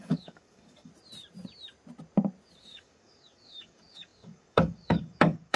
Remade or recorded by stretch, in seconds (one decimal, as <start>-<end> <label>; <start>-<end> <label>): 0.0-0.9 remade; 0.9-2.6 recorded; 2.6-5.6 remade